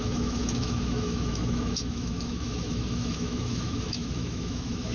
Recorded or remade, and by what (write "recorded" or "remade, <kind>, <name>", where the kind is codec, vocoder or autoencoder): remade, autoencoder, DAC-VAE